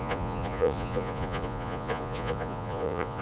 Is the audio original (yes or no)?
no